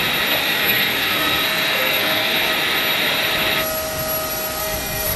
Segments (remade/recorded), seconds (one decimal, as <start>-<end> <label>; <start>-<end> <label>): 0.0-0.4 recorded; 0.4-2.5 remade; 2.5-4.6 recorded; 4.6-5.2 remade